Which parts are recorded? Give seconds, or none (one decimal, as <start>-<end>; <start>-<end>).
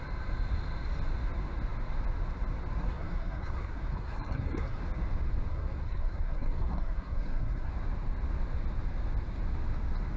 0.0-2.8; 4.8-5.5; 7.7-10.2